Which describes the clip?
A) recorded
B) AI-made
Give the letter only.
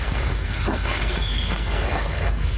B